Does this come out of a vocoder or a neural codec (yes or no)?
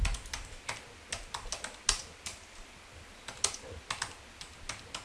no